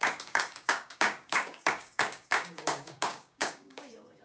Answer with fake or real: fake